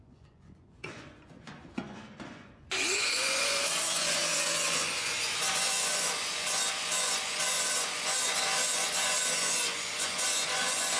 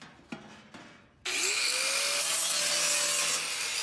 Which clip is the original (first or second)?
second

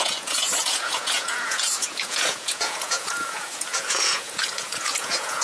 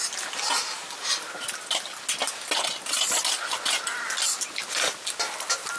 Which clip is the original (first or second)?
second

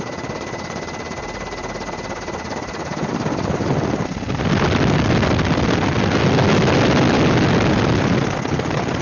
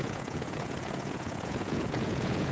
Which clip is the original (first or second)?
first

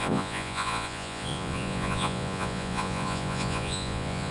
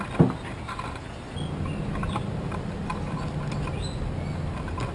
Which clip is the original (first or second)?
second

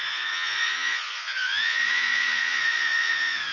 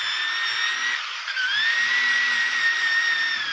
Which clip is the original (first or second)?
second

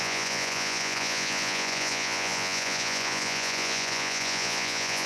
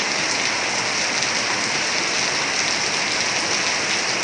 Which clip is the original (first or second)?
second